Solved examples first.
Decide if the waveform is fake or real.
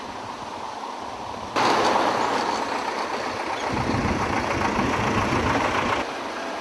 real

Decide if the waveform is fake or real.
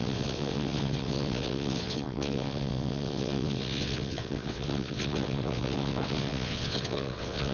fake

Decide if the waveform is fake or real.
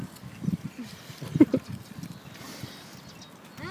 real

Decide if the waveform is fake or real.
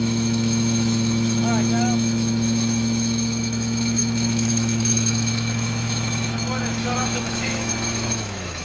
fake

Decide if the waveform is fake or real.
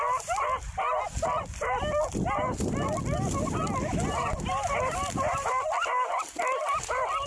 real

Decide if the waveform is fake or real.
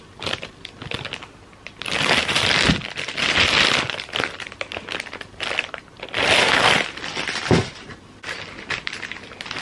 real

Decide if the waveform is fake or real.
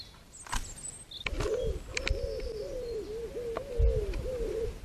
real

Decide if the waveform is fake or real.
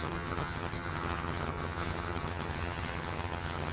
fake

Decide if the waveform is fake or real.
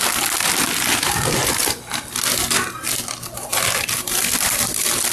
real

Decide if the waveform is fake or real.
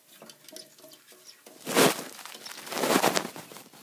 real